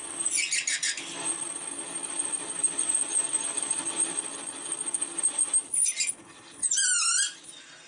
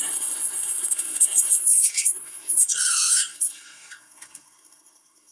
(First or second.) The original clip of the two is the first